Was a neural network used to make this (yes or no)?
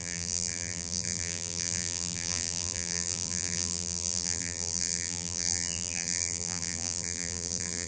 yes